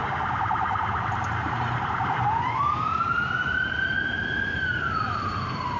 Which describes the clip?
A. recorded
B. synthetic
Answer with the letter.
B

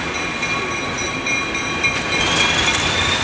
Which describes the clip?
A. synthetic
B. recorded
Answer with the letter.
B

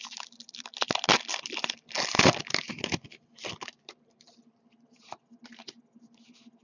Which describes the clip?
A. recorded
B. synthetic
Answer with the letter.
A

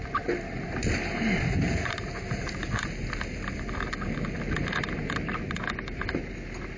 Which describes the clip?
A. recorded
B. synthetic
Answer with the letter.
A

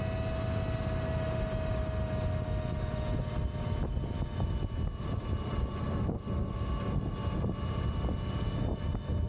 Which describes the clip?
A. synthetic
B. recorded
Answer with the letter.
B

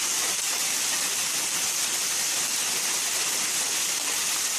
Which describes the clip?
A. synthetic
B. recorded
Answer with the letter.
B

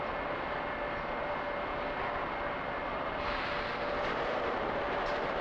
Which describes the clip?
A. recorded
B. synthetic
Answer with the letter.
A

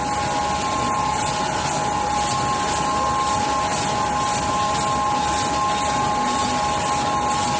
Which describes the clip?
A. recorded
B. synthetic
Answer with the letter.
A